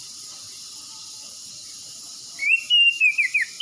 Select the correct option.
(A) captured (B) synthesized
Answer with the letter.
B